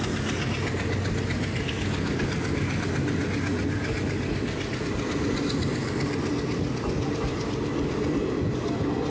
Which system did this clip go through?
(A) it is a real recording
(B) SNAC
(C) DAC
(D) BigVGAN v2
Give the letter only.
A